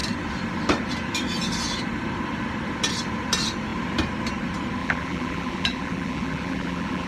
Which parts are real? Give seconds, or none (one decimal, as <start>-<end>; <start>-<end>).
0.0-4.8

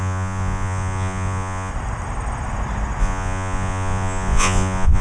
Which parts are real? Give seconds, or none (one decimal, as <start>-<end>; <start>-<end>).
1.7-3.0

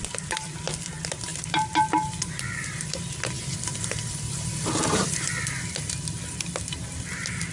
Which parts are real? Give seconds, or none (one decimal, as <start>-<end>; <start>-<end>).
0.0-1.3; 5.8-7.5